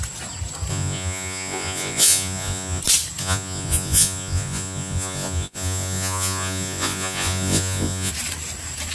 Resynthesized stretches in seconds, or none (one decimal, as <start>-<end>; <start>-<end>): 0.7-2.8; 3.2-8.1